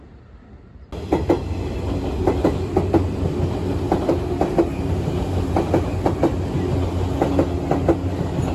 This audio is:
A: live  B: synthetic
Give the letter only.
A